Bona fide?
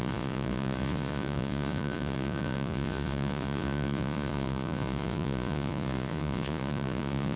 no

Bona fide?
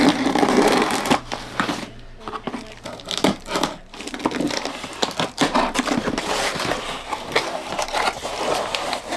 yes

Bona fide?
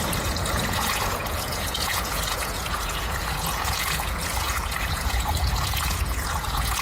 no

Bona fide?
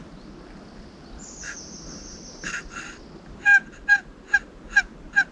yes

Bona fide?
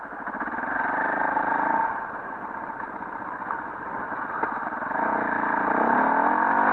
yes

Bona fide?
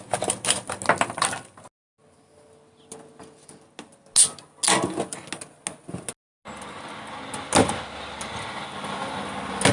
yes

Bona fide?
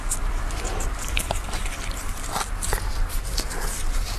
no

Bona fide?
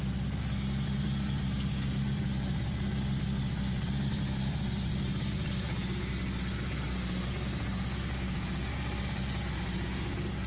yes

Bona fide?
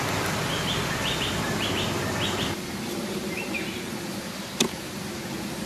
yes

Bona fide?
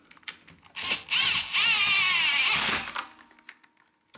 yes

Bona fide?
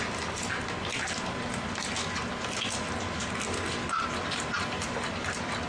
yes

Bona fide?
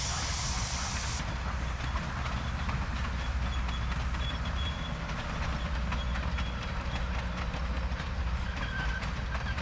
yes